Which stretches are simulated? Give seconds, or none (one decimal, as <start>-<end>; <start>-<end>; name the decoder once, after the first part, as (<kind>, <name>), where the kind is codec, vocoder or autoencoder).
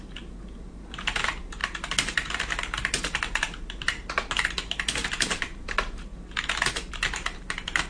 0.0-6.1 (vocoder, BigVGAN v2); 6.9-7.9